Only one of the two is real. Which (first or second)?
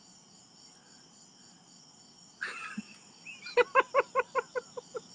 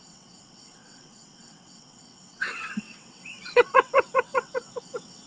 first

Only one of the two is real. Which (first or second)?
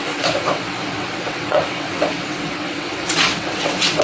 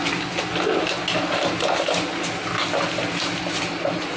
second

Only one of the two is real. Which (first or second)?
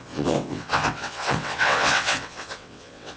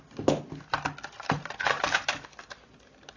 second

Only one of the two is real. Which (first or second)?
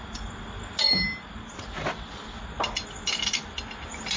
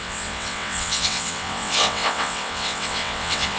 first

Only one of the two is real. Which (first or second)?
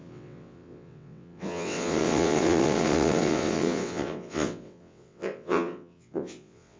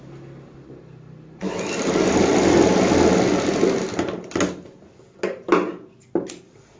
second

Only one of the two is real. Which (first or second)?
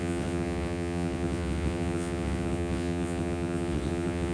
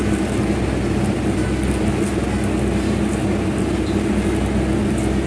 second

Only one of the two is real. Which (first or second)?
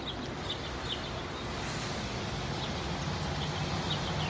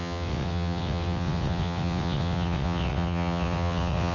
first